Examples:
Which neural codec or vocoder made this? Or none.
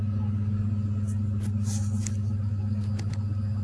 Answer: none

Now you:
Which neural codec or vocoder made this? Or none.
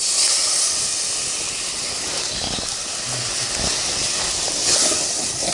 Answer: none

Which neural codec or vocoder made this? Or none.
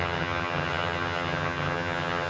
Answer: vocoder, HiFi-GAN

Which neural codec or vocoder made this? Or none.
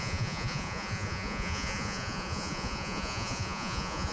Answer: vocoder, Vocos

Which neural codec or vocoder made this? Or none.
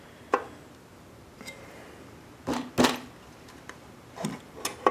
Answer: none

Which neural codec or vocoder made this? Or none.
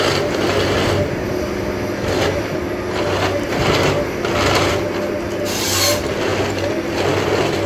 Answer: none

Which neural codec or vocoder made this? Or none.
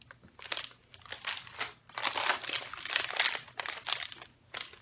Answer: none